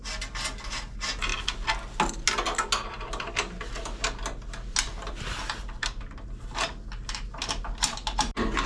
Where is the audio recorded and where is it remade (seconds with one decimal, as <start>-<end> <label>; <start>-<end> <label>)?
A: 0.0-8.7 recorded